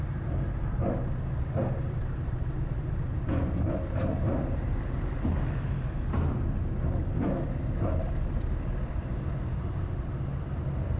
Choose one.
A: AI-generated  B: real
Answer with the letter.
B